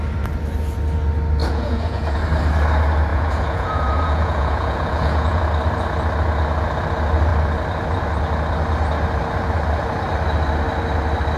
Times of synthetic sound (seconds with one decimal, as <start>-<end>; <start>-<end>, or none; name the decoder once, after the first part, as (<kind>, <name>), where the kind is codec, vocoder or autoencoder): 1.4-2.2 (vocoder, Vocos); 3.1-5.4